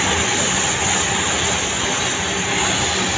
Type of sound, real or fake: real